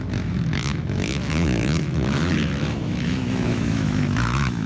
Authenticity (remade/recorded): remade